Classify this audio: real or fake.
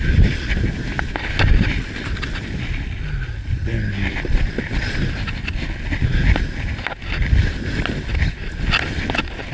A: real